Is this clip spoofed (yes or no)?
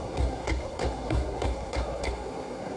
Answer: yes